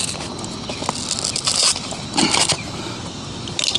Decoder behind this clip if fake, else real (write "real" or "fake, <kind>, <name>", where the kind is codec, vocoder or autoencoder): real